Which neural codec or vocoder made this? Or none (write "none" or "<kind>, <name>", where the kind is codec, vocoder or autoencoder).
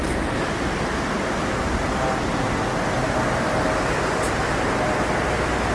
none